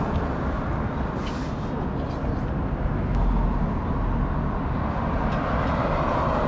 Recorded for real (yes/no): yes